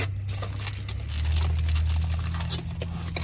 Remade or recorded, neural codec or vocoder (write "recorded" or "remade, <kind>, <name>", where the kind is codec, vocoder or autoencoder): recorded